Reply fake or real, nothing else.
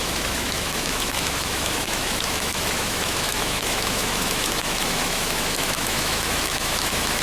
fake